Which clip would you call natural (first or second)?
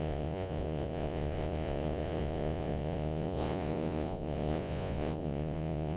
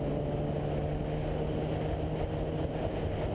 second